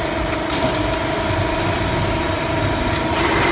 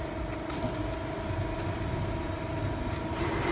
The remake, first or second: first